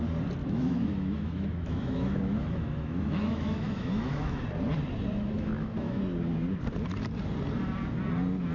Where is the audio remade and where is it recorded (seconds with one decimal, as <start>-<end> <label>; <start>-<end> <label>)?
0.0-0.4 recorded; 0.4-4.4 remade; 4.4-5.1 recorded; 5.1-6.0 remade; 6.0-8.5 recorded